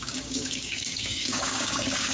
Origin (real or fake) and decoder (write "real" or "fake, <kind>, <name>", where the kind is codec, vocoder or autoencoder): fake, codec, DAC